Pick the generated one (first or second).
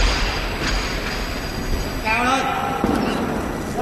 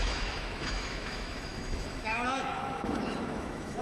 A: second